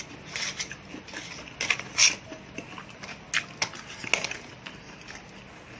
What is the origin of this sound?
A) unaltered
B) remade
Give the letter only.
A